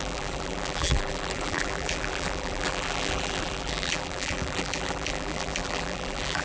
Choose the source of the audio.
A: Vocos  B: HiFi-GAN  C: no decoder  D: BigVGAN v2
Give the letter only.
D